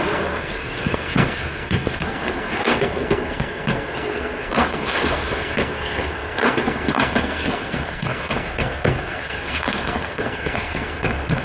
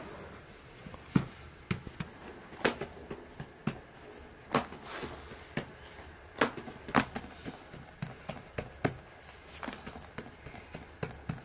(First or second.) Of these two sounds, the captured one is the second